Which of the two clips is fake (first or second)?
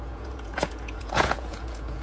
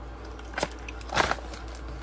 first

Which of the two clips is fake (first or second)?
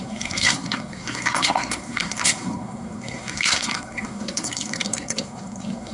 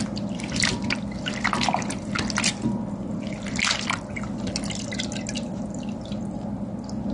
first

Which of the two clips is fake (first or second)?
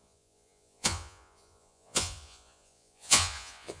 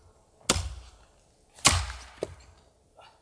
first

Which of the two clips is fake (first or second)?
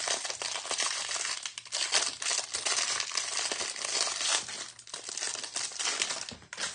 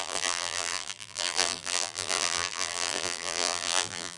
second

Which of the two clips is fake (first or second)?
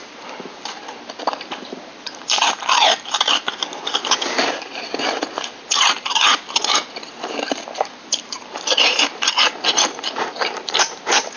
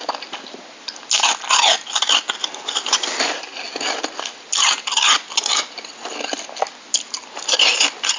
first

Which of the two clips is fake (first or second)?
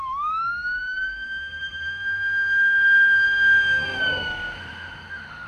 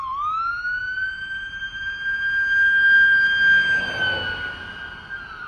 first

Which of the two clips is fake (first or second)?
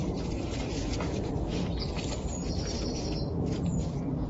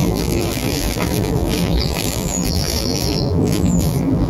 second